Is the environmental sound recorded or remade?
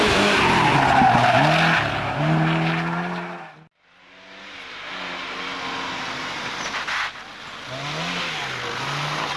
recorded